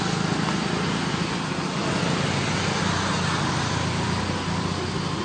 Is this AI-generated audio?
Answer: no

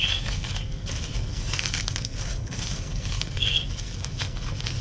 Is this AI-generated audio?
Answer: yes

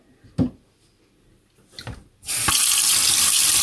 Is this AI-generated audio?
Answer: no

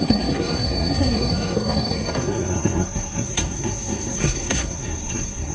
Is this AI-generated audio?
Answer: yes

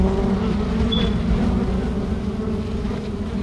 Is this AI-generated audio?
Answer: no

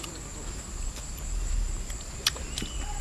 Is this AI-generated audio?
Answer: no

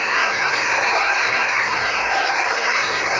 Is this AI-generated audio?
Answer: yes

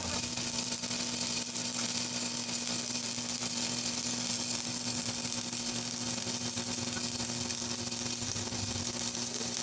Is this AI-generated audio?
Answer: no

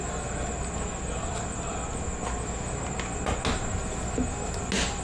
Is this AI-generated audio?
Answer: no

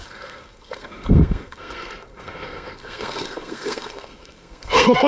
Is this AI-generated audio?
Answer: yes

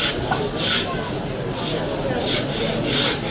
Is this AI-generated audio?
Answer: no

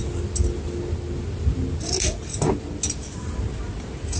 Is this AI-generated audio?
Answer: no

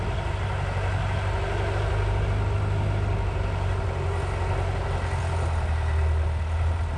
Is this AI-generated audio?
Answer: no